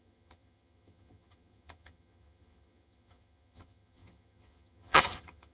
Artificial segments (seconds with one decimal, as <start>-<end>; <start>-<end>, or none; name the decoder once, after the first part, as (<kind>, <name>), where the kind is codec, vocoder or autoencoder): 0.0-5.5 (vocoder, HiFi-GAN)